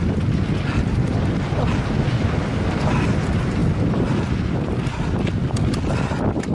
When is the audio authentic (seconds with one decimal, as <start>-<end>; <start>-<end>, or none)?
0.0-6.5